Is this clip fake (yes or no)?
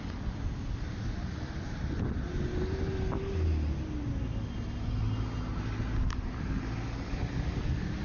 no